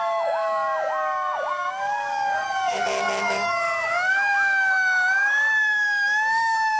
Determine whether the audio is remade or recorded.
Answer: remade